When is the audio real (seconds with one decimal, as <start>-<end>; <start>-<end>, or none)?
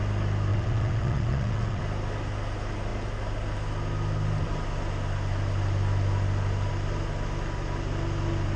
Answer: 0.0-0.5; 1.8-8.6